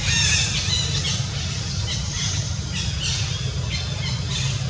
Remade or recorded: recorded